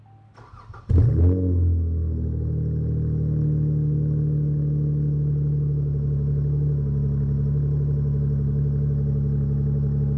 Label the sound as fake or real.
real